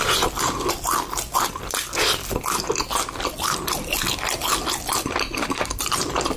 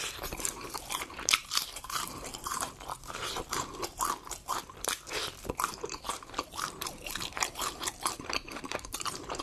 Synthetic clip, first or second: second